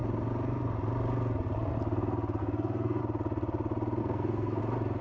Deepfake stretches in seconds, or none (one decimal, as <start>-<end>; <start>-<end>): 2.4-3.0; 4.0-4.6